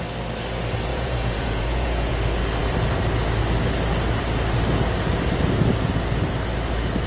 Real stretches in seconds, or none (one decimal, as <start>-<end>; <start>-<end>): 0.0-0.9; 2.1-7.1